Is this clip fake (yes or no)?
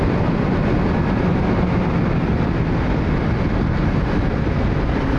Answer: no